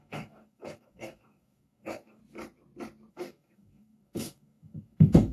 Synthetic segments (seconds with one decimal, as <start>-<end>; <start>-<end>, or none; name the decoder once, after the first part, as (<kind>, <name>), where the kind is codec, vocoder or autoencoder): 0.0-2.2 (codec, DAC); 3.1-5.3